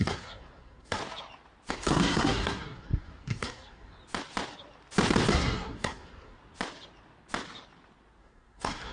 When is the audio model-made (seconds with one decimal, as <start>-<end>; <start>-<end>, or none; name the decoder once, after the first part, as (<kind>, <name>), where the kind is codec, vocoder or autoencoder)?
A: 0.0-1.0 (codec, SNAC); 1.7-4.0; 5.3-6.4; 8.2-8.9